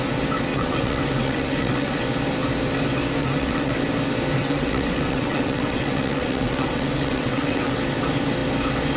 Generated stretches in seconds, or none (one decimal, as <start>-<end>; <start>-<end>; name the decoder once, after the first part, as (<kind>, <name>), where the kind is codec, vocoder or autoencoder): 0.5-2.0 (vocoder, WaveNeXt); 3.2-3.7; 4.4-7.7